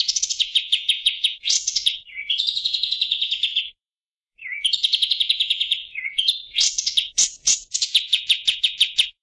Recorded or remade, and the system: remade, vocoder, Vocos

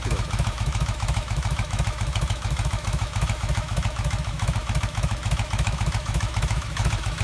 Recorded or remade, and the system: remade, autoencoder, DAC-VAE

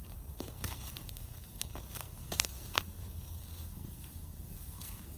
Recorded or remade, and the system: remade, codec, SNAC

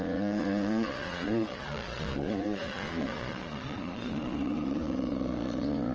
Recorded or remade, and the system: remade, vocoder, Vocos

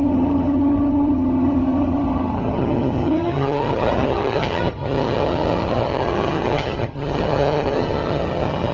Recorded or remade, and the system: remade, vocoder, HiFi-GAN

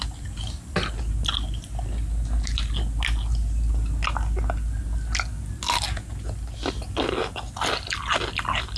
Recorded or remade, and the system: recorded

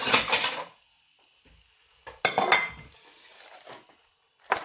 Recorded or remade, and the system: recorded